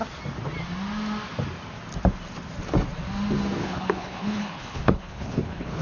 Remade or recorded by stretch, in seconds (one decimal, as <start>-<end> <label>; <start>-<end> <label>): 0.0-3.6 recorded; 3.6-5.8 remade